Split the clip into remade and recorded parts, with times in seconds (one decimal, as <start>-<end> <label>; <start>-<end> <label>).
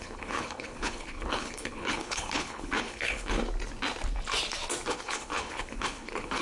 0.0-3.4 remade; 3.4-4.9 recorded; 4.9-6.4 remade